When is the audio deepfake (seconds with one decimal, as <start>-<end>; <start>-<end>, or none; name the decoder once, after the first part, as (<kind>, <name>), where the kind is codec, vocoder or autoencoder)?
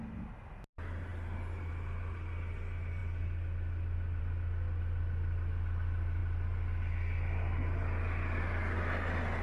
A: none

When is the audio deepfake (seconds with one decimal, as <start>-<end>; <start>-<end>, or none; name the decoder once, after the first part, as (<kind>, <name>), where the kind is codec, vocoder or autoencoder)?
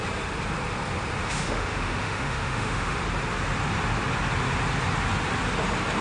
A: 1.2-3.0 (autoencoder, DAC-VAE)